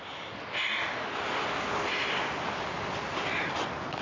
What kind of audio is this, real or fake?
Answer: real